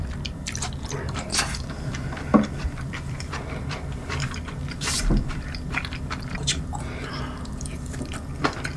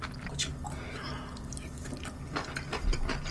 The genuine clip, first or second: second